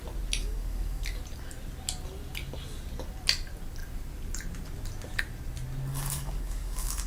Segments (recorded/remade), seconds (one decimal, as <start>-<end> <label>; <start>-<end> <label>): 0.0-0.4 recorded; 0.4-1.2 remade; 1.2-5.9 recorded; 5.9-7.1 remade